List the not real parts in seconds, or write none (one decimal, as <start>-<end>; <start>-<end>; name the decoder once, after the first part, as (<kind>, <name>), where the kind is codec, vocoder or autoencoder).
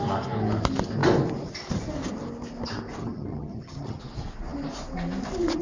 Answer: 3.0-4.0 (vocoder, HiFi-GAN)